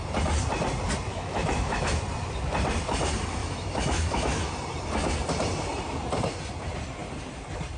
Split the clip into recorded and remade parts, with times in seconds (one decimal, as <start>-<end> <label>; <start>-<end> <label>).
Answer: 0.0-1.1 recorded; 1.1-2.0 remade; 2.0-3.4 recorded; 3.4-4.5 remade; 4.5-7.8 recorded